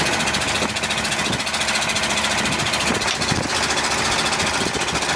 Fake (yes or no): no